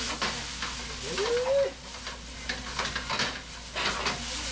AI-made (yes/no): no